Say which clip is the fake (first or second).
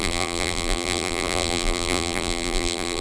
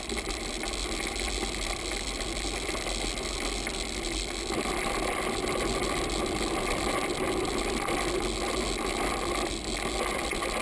first